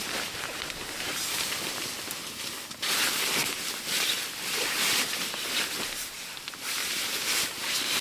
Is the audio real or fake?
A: real